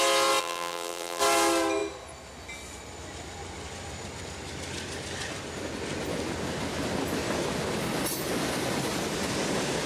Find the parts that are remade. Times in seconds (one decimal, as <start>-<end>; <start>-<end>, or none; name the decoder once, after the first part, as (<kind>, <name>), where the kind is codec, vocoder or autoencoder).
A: 0.4-1.2 (vocoder, BigVGAN v2)